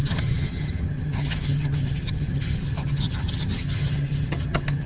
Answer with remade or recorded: remade